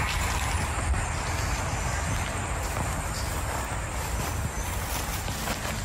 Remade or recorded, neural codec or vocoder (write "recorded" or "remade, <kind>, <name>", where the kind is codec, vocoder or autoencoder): recorded